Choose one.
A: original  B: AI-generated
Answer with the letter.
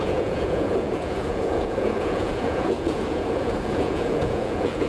B